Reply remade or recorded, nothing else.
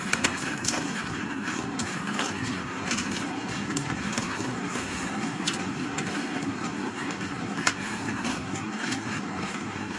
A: remade